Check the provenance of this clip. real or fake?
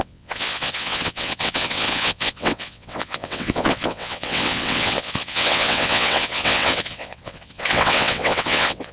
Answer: fake